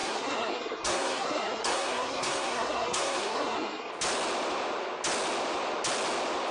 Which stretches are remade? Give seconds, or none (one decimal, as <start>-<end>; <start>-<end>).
0.0-3.9